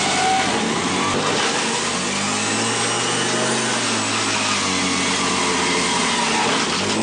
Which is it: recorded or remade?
recorded